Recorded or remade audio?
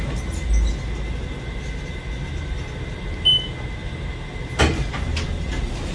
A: recorded